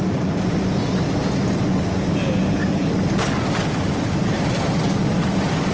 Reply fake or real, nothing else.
real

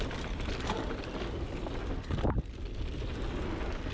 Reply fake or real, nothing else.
real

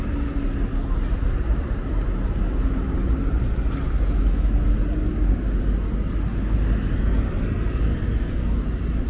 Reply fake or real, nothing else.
real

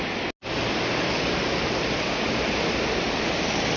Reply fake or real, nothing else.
real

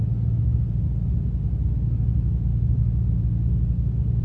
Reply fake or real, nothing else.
real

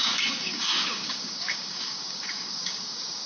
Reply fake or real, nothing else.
fake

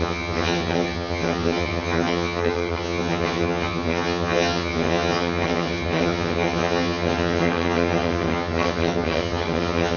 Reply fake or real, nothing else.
fake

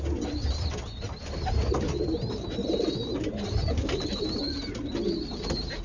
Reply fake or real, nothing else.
real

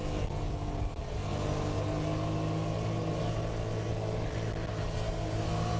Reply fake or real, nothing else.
real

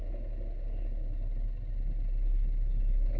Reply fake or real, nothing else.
real